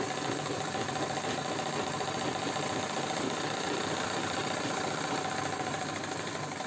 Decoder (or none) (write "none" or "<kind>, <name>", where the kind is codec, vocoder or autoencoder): vocoder, BigVGAN v2